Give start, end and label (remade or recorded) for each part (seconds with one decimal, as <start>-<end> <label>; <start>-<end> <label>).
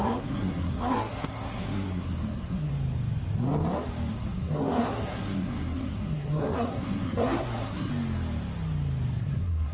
0.0-2.7 remade; 2.7-4.1 recorded; 4.1-7.9 remade; 7.9-9.2 recorded; 9.2-9.7 remade